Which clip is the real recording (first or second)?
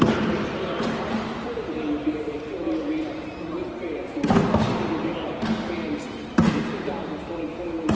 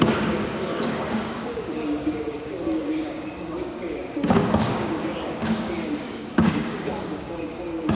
first